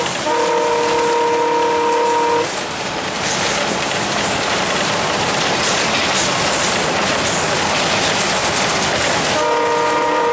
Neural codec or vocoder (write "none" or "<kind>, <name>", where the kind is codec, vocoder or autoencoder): none